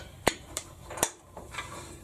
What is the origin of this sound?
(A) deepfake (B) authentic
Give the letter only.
A